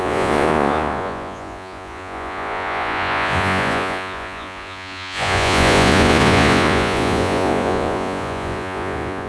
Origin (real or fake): fake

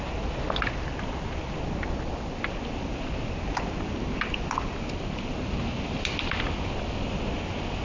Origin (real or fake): real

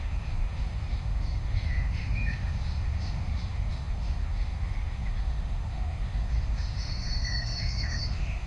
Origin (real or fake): fake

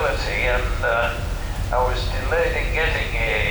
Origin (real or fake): real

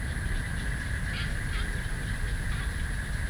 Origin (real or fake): real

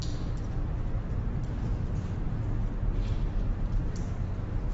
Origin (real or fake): real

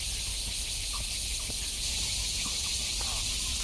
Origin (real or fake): real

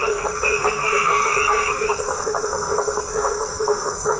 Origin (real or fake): fake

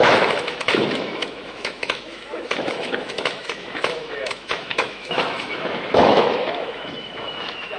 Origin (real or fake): fake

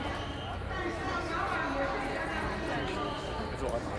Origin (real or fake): real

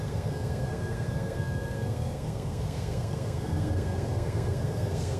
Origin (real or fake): fake